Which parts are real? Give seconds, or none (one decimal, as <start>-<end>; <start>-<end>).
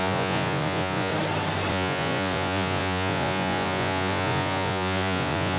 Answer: 1.1-1.7